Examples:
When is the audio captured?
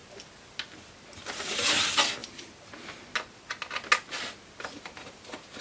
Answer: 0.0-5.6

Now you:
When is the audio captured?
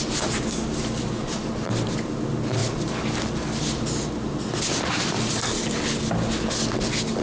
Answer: 0.0-7.2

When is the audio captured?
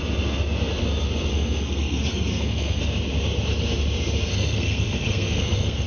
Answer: 0.0-1.3; 2.8-4.3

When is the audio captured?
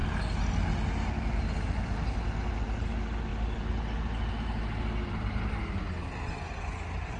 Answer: 0.0-7.2